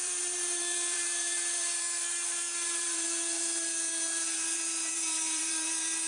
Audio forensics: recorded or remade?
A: remade